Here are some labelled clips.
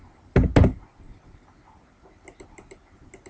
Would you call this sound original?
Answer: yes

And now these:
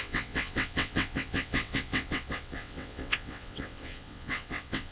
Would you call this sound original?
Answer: no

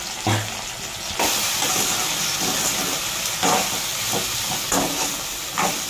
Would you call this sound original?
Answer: yes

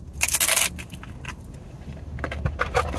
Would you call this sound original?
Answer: yes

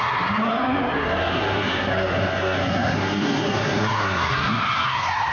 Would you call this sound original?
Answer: no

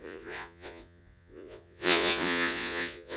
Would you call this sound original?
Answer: no